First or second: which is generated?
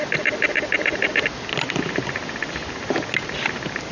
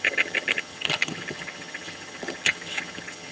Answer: second